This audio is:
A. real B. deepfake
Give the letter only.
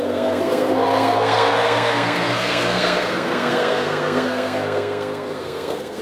B